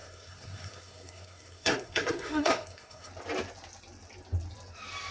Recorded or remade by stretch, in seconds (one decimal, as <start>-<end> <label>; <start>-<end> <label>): 0.0-3.1 remade; 3.1-5.1 recorded